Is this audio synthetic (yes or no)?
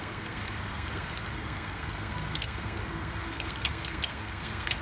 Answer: yes